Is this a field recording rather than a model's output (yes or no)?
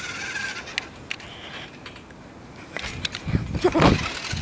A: yes